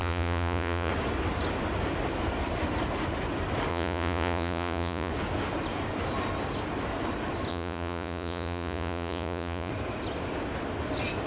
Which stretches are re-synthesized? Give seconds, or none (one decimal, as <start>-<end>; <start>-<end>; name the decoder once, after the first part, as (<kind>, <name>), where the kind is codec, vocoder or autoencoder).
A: 0.0-0.9 (vocoder, Vocos); 3.7-5.1; 7.5-9.7